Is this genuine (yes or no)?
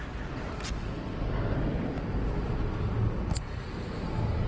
yes